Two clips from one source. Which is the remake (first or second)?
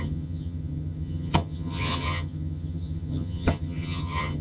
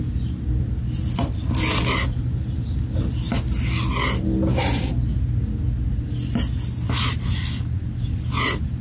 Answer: first